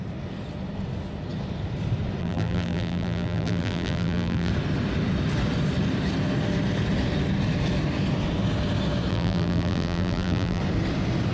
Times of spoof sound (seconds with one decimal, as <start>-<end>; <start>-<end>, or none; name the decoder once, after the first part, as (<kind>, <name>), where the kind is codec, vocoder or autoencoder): 2.2-4.5 (vocoder, BigVGAN v2); 9.1-10.6